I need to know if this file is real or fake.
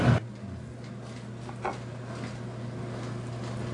real